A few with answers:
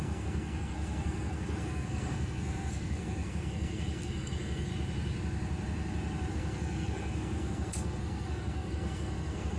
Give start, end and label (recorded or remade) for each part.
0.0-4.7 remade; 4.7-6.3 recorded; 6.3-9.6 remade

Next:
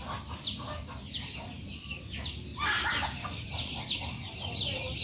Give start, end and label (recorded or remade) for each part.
0.0-5.0 recorded